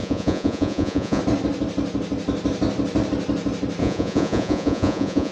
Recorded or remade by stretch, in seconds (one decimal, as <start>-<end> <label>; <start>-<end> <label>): 0.0-1.2 remade; 1.2-3.8 recorded; 3.8-5.3 remade